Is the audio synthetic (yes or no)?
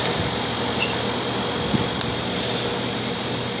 no